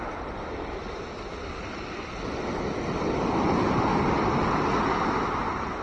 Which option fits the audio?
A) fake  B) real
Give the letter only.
B